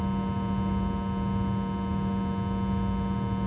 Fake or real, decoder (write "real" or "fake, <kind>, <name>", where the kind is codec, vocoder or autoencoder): real